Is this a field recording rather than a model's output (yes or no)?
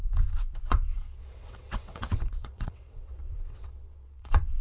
no